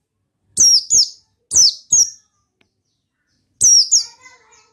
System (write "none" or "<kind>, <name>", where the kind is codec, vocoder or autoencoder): none